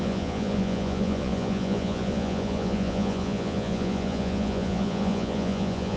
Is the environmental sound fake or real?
fake